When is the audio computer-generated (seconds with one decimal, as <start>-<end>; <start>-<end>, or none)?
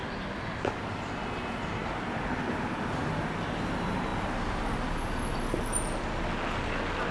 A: none